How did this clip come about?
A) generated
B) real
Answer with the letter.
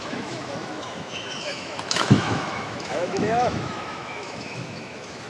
A